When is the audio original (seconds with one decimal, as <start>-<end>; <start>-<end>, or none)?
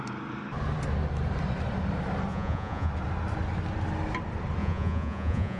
0.0-2.3; 2.9-4.6